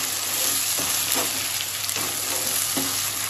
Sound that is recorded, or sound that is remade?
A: recorded